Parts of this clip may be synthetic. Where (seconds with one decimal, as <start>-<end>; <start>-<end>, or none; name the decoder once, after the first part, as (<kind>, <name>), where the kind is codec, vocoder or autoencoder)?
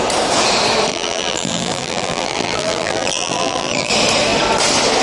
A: 0.9-3.9 (vocoder, BigVGAN v2)